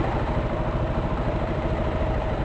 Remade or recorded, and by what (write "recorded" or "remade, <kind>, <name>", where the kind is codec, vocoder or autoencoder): remade, vocoder, BigVGAN v2